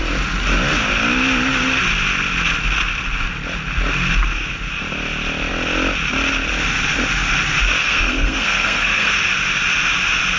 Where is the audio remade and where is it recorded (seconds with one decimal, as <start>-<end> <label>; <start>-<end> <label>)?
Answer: 0.0-7.8 recorded; 7.8-9.1 remade; 9.1-10.4 recorded